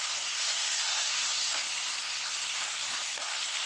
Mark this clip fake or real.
fake